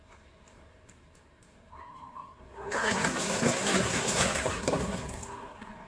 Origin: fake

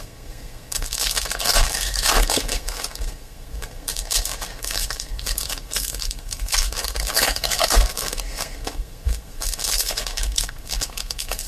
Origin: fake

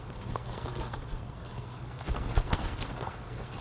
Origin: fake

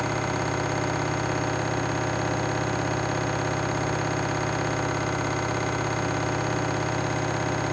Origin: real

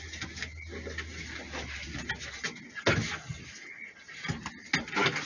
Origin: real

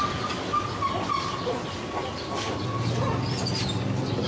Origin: real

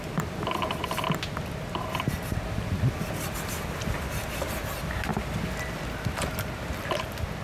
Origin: real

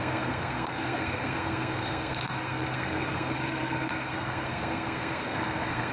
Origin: fake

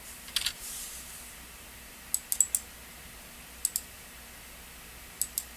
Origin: real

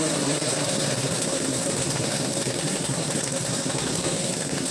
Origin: fake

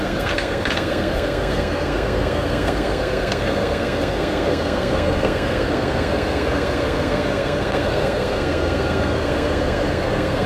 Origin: fake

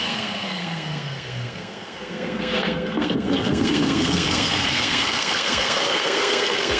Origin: fake